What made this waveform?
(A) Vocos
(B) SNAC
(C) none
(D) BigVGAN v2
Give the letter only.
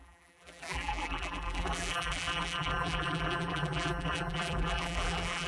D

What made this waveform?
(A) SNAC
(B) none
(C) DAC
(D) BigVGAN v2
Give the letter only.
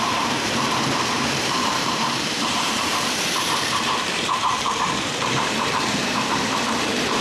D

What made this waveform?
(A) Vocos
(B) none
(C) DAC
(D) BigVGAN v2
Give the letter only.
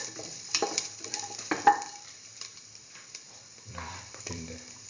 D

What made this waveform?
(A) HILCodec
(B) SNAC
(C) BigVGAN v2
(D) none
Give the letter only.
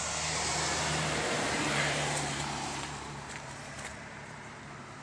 C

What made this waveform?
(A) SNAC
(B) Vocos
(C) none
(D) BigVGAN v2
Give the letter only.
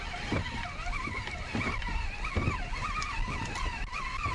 C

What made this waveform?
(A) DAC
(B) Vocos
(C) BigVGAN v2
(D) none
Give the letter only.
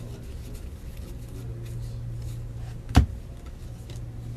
D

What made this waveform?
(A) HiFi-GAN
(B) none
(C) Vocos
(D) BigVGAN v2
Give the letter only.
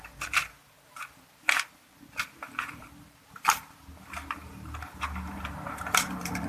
D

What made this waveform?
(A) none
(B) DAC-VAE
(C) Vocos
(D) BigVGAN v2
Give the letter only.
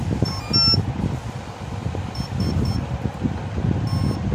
A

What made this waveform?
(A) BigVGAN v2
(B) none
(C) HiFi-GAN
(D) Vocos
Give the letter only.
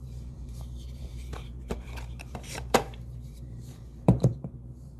A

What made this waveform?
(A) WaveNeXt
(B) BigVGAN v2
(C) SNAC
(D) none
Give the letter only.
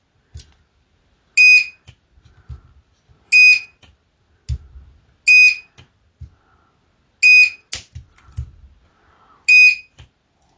D